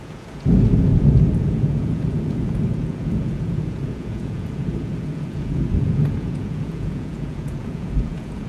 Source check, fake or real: fake